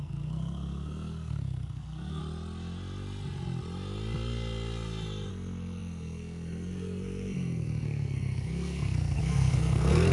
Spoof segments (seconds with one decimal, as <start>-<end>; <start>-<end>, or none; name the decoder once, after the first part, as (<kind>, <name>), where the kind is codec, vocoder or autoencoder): 0.0-2.2 (codec, SNAC); 5.3-10.1